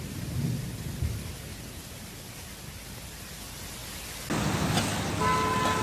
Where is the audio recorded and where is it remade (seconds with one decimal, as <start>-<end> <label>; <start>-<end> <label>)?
0.0-1.5 recorded; 1.5-3.2 remade; 3.2-5.8 recorded